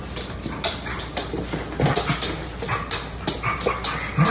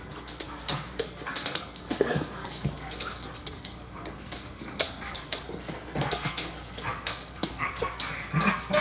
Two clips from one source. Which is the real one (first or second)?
first